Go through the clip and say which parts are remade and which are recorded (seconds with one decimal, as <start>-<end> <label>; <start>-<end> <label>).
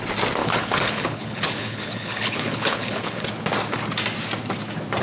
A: 0.0-0.4 recorded; 0.4-3.3 remade; 3.3-5.0 recorded